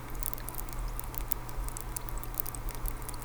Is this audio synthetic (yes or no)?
no